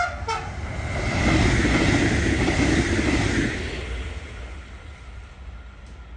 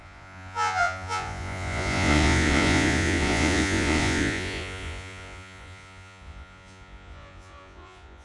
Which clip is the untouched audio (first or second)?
first